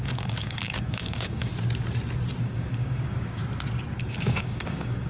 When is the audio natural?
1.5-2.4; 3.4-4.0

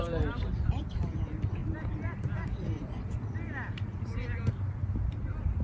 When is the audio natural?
0.0-1.6; 4.4-5.6

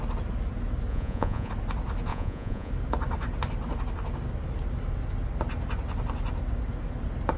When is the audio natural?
0.0-0.9; 1.5-2.1; 2.7-7.4